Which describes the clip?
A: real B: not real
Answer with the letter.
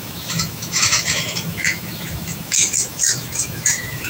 B